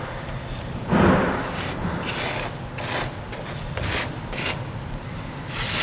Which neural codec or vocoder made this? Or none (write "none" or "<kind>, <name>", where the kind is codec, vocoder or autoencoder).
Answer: none